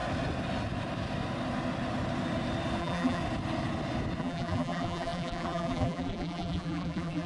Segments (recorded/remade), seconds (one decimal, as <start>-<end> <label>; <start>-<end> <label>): 0.0-2.8 recorded; 2.8-3.2 remade; 3.2-4.2 recorded; 4.2-7.3 remade